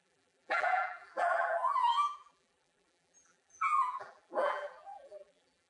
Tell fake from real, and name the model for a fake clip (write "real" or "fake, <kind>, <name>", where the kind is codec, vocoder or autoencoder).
fake, vocoder, BigVGAN v2